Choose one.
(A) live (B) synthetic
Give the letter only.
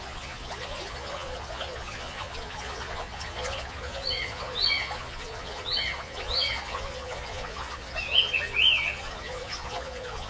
B